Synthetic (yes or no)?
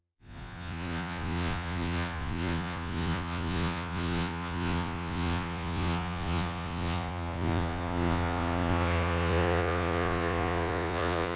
yes